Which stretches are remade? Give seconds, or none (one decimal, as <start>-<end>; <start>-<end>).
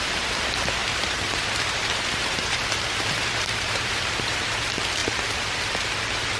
0.8-4.6; 5.0-5.6